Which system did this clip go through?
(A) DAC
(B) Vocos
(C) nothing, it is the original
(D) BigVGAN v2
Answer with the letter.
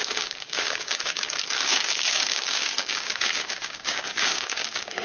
A